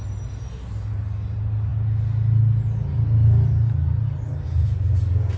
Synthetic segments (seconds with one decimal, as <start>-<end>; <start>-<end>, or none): none